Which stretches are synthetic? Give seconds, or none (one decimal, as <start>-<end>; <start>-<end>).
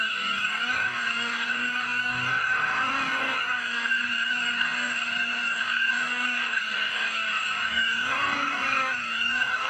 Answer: 0.0-9.7